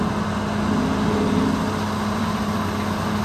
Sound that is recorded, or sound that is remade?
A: recorded